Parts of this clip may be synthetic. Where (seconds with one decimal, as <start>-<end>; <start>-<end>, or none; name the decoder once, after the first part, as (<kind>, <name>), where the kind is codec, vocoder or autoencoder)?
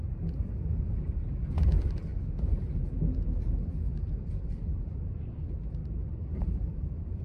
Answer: 5.8-7.2 (vocoder, BigVGAN v2)